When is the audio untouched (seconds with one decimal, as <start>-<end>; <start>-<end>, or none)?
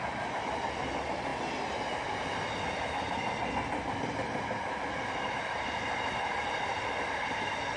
0.0-7.8